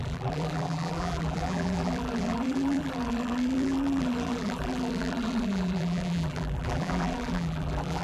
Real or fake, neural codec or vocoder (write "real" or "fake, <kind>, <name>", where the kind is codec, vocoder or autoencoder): fake, vocoder, BigVGAN v2